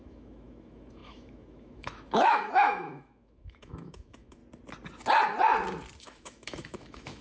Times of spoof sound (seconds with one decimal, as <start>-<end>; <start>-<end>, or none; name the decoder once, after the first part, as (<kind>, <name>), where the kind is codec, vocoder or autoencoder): 0.0-4.4 (autoencoder, DAC-VAE); 6.0-7.2